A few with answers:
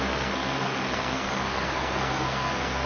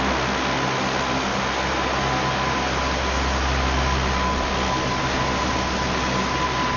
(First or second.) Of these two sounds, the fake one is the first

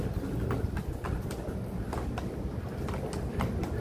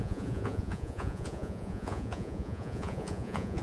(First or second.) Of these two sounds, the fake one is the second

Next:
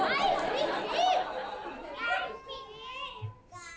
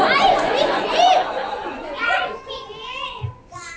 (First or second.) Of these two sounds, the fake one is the second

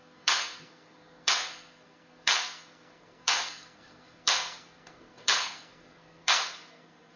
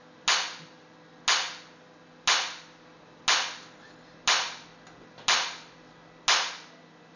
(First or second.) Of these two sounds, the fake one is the first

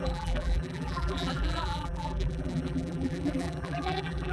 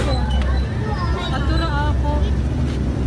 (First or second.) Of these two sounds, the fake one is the first